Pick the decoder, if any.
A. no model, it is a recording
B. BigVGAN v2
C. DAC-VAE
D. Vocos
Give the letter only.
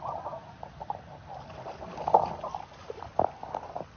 A